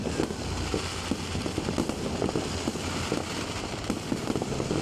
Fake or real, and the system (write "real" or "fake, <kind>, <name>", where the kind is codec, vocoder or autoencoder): real